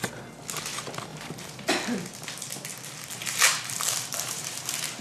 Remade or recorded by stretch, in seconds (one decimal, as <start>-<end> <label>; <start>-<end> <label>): 0.0-1.1 recorded; 1.1-1.7 remade; 1.7-3.2 recorded; 3.2-5.0 remade